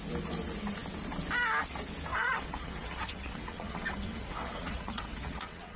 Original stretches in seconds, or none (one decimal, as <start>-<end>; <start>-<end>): 0.0-2.1